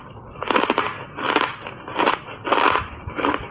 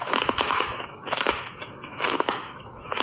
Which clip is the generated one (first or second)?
second